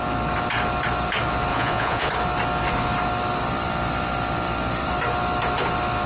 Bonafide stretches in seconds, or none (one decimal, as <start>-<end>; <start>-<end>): 0.0-1.5; 2.1-6.1